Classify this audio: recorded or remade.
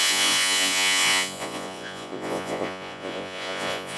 remade